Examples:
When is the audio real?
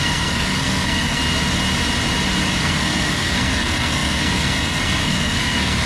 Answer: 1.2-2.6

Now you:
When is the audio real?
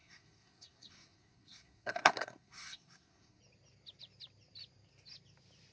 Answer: 3.4-5.7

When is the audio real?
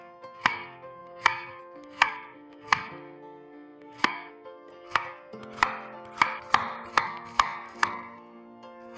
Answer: 5.4-6.9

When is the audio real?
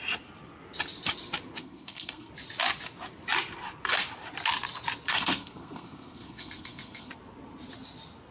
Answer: 0.0-1.6; 2.3-5.1; 7.1-8.3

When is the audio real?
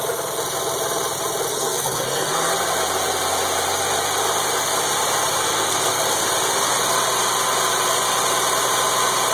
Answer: 0.0-1.5; 2.5-5.4; 6.0-9.3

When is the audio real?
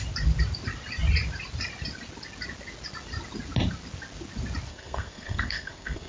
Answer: 0.0-4.7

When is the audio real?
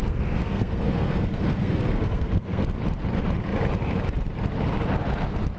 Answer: 2.6-5.6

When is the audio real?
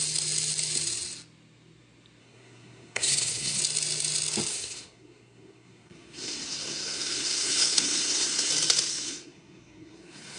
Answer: 0.0-2.2; 3.6-4.5; 8.5-8.9